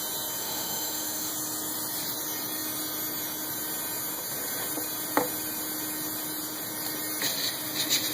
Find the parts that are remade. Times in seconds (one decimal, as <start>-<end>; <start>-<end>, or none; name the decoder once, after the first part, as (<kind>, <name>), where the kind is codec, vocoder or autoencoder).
0.4-1.3 (autoencoder, DAC-VAE)